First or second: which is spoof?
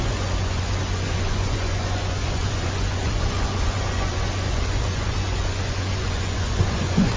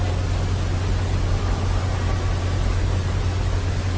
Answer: first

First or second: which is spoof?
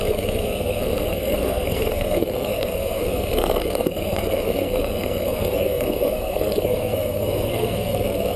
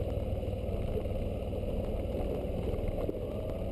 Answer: first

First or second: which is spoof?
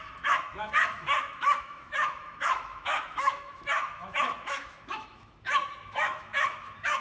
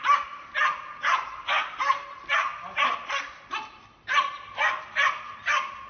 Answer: first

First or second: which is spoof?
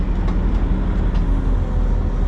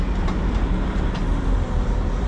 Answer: second